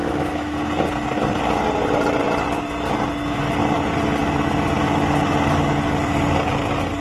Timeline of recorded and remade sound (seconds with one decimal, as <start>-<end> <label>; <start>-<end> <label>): 0.0-0.6 remade; 0.6-7.0 recorded